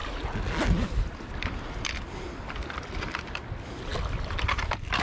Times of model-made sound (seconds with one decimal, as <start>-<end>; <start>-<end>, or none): none